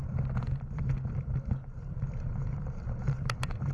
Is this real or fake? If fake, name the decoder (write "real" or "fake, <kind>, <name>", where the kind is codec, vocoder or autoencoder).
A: fake, vocoder, BigVGAN v2